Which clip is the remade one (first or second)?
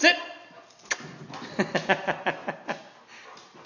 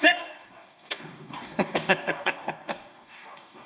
second